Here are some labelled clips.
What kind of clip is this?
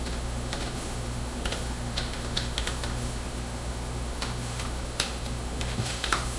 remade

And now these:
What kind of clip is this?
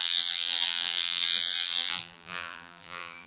remade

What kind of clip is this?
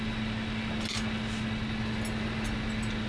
recorded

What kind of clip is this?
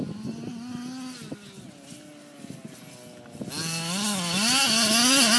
recorded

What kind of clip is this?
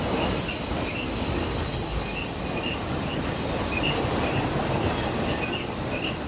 recorded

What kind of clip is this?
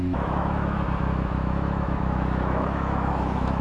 remade